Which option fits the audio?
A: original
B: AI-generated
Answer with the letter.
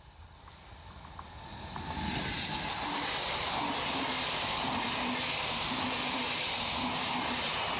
A